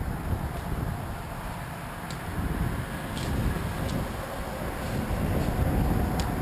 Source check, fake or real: real